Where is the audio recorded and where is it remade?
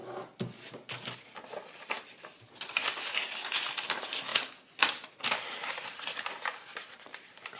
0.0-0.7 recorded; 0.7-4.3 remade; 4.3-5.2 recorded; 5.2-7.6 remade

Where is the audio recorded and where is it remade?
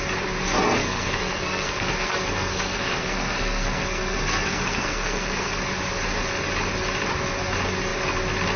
0.0-0.8 recorded; 0.8-5.6 remade; 5.6-8.6 recorded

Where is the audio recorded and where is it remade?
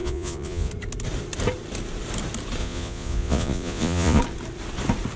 0.0-0.7 remade; 0.7-2.6 recorded; 2.6-4.2 remade; 4.2-5.2 recorded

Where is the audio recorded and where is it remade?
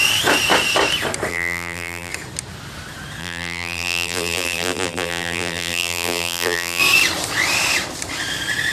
0.0-1.3 recorded; 1.3-2.1 remade; 2.1-3.2 recorded; 3.2-6.8 remade; 6.8-8.7 recorded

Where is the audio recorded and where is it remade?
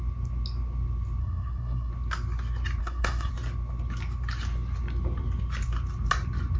0.0-1.2 recorded; 1.2-1.9 remade; 1.9-2.8 recorded; 2.8-3.3 remade; 3.3-6.6 recorded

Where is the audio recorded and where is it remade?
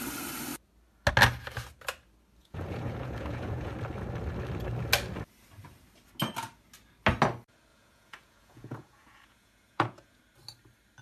0.0-2.4 recorded; 2.4-3.7 remade; 3.7-7.7 recorded; 7.7-10.2 remade; 10.2-11.0 recorded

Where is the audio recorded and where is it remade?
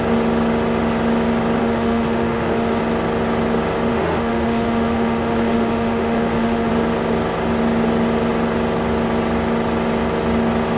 0.0-1.6 recorded; 1.6-2.8 remade; 2.8-3.9 recorded; 3.9-6.7 remade; 6.7-10.8 recorded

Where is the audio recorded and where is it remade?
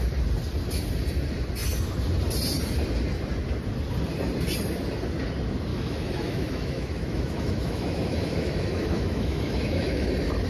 0.0-5.7 recorded; 5.7-10.1 remade; 10.1-10.5 recorded